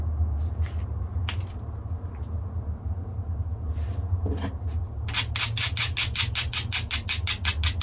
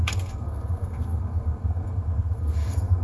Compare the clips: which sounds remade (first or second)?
second